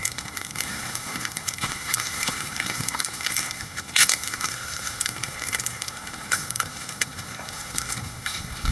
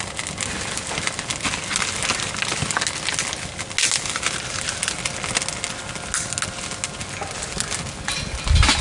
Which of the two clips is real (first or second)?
second